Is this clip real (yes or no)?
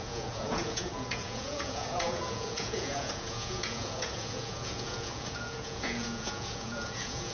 no